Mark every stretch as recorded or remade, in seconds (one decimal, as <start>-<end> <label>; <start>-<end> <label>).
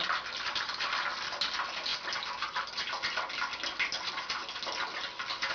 0.0-5.5 recorded